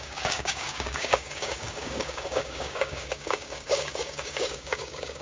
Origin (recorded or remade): remade